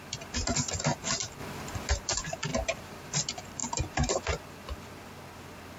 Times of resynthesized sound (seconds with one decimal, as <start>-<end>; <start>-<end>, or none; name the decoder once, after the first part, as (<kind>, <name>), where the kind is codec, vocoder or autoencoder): 1.4-1.9 (vocoder, BigVGAN v2); 2.5-3.2